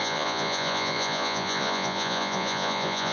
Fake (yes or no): yes